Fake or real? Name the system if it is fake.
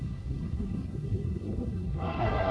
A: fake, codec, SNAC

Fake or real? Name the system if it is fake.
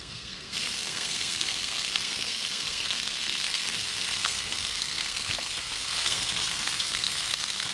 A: fake, codec, SNAC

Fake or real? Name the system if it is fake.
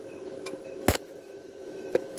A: fake, autoencoder, DAC-VAE